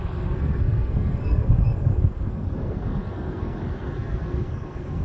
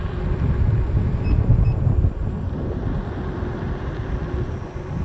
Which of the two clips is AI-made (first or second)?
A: first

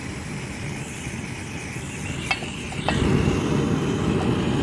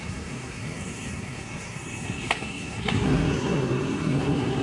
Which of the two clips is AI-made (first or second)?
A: second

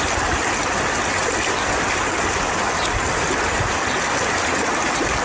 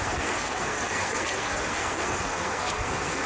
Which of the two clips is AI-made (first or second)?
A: second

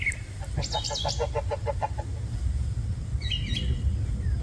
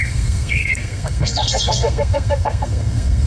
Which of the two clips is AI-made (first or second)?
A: second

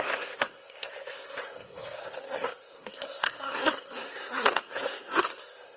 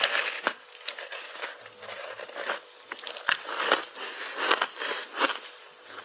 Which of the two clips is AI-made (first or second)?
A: first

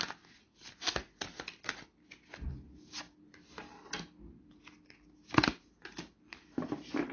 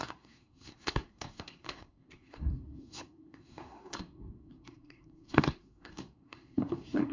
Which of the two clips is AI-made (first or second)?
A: second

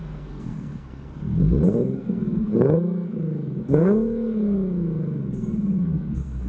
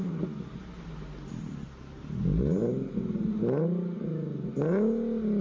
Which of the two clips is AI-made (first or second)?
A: first